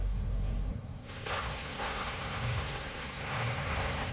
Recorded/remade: remade